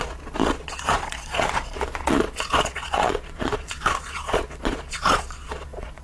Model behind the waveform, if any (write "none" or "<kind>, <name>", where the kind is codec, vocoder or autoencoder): vocoder, Vocos